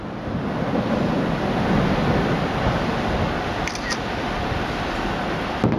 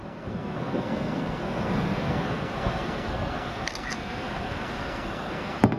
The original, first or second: first